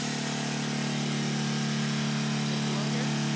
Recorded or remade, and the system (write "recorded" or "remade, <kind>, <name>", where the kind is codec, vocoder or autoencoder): recorded